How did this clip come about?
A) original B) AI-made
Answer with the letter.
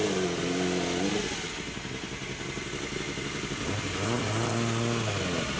A